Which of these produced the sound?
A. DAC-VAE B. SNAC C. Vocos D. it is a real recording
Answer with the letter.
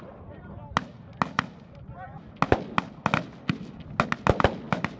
D